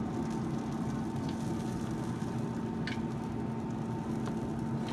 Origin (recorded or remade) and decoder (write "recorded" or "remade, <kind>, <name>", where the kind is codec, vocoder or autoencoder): recorded